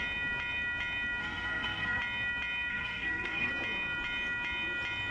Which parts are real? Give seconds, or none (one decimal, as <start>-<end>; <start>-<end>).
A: 0.0-1.2; 2.0-2.7; 3.5-5.1